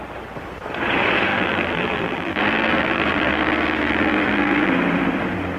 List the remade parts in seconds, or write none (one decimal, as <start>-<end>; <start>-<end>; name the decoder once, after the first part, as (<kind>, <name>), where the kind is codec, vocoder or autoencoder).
1.3-4.7 (vocoder, BigVGAN v2)